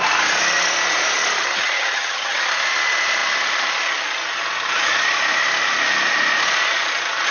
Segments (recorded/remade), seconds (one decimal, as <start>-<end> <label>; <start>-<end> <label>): 0.0-1.4 recorded; 1.4-2.4 remade; 2.4-7.3 recorded